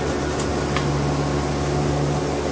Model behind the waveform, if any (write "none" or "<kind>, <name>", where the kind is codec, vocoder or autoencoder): none